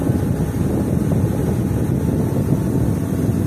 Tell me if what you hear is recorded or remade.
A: recorded